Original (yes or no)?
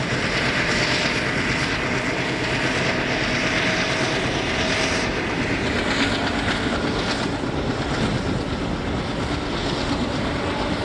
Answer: yes